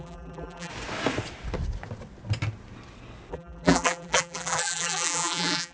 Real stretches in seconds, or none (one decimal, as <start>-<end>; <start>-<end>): 0.7-3.3